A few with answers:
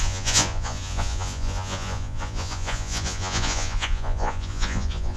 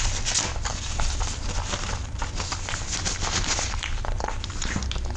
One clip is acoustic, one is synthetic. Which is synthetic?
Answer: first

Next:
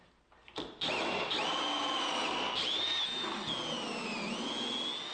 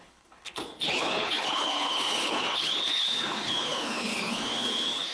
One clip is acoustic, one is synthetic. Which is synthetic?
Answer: second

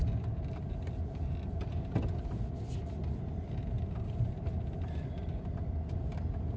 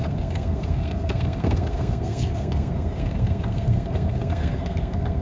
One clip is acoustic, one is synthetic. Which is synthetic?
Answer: second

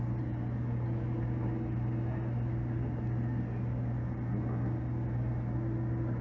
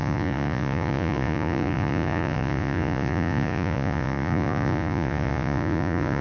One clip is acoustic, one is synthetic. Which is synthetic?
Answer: second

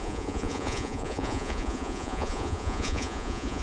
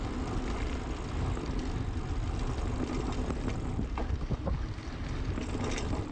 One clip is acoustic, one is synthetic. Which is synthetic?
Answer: first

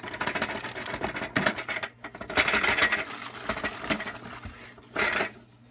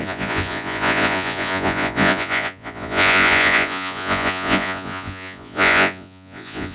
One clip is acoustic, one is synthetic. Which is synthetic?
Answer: second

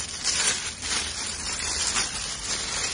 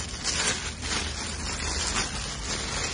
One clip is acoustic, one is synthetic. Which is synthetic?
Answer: first